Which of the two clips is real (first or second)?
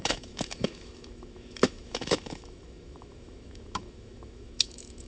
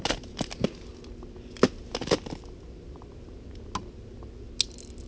second